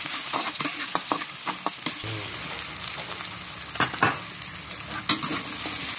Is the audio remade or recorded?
recorded